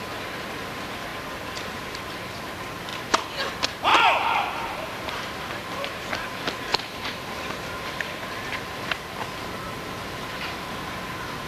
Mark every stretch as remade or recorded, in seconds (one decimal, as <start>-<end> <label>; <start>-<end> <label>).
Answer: 0.0-1.1 recorded; 1.1-2.0 remade; 2.0-3.9 recorded; 3.9-6.1 remade; 6.1-6.7 recorded; 6.7-9.3 remade; 9.3-11.5 recorded